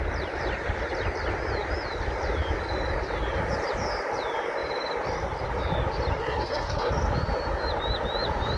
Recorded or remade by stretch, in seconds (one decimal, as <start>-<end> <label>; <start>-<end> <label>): 0.0-6.2 recorded; 6.2-6.9 remade; 6.9-8.6 recorded